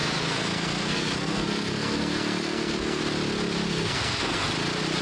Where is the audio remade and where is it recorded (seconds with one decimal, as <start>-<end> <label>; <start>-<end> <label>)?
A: 0.0-3.0 remade; 3.0-3.7 recorded; 3.7-4.5 remade; 4.5-5.0 recorded